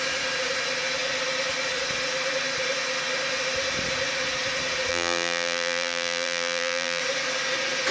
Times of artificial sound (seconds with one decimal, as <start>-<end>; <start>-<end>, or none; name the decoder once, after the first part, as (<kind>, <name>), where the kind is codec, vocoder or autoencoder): 4.9-7.0 (vocoder, BigVGAN v2)